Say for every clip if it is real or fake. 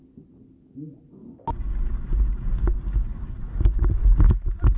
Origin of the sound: real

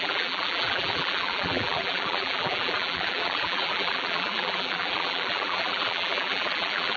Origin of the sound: fake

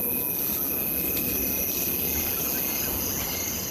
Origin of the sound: real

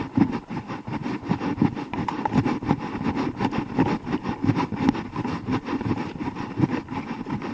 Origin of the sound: real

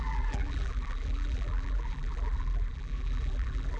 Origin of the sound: fake